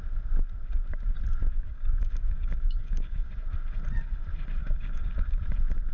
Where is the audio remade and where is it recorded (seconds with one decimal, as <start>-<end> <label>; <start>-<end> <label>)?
0.0-1.4 recorded; 1.4-3.3 remade; 3.3-4.6 recorded; 4.6-5.4 remade; 5.4-5.9 recorded